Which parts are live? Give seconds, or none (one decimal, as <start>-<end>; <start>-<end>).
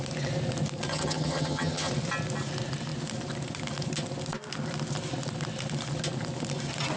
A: 0.0-0.9; 1.9-7.0